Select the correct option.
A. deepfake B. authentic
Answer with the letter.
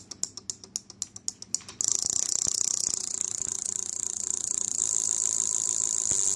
B